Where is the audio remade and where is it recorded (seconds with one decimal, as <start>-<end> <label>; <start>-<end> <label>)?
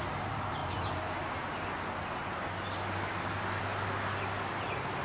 0.0-5.0 recorded